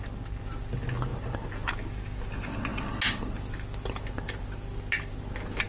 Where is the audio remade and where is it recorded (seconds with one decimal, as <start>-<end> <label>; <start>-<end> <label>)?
0.0-5.7 recorded